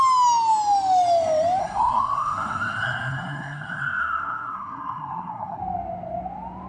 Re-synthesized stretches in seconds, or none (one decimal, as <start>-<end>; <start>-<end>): 1.6-5.6